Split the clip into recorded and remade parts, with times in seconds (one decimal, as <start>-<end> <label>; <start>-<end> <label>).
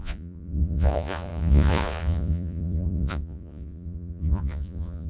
0.0-5.1 remade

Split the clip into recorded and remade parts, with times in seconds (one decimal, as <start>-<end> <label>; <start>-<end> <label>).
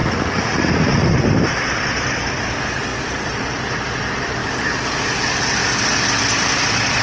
0.0-1.2 remade; 1.2-7.0 recorded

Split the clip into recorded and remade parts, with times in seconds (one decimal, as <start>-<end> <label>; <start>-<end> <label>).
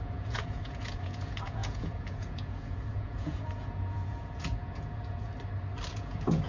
0.0-5.3 remade; 5.3-5.9 recorded; 5.9-6.5 remade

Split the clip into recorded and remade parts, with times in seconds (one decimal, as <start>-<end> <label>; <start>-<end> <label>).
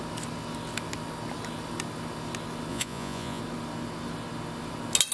0.0-2.7 recorded; 2.7-3.4 remade; 3.4-5.1 recorded